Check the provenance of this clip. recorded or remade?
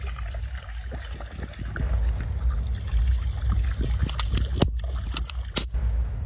recorded